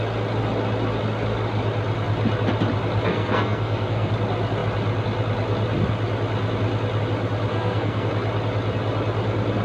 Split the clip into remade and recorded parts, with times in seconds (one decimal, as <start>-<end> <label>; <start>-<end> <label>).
0.0-3.1 recorded; 3.1-4.1 remade; 4.1-7.5 recorded; 7.5-8.1 remade; 8.1-9.6 recorded